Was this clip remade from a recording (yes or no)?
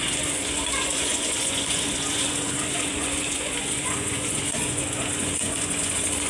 yes